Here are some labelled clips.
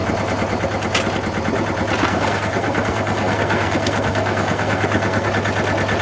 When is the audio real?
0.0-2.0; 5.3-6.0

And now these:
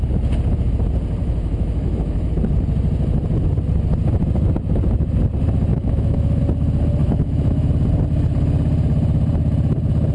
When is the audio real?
0.0-1.2; 2.3-5.7; 6.4-7.0; 7.7-10.1

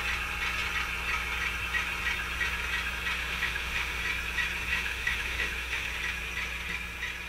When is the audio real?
0.0-3.2; 4.0-4.7; 5.9-7.3

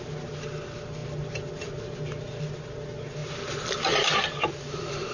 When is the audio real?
0.0-5.1

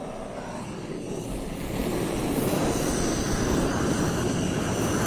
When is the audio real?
0.0-5.1

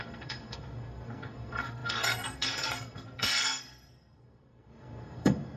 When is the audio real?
none